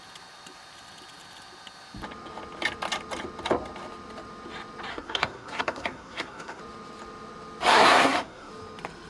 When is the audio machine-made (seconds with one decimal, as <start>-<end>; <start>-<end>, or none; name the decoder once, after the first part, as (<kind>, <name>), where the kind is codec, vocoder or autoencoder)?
4.9-6.6 (codec, SNAC); 7.7-8.5